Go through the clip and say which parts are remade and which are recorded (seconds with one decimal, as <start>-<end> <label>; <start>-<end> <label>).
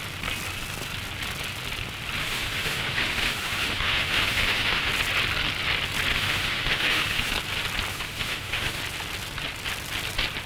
0.0-2.2 recorded; 2.2-4.9 remade; 4.9-6.1 recorded; 6.1-7.3 remade; 7.3-7.9 recorded; 7.9-8.8 remade; 8.8-10.5 recorded